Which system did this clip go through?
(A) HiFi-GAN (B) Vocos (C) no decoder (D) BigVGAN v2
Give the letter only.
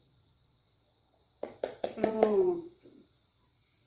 B